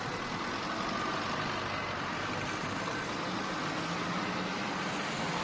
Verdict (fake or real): real